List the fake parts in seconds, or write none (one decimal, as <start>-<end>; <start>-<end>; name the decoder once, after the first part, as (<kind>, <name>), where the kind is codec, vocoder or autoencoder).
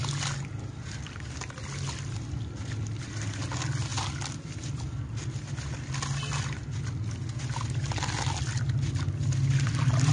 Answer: none